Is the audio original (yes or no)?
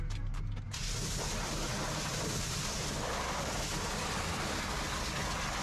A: yes